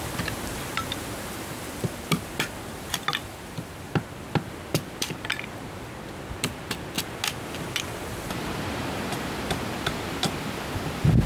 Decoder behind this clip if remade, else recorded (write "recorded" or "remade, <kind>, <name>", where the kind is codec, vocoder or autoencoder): recorded